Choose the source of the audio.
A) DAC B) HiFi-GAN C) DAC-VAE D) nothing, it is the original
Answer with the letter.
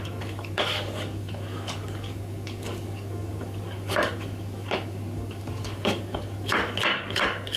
A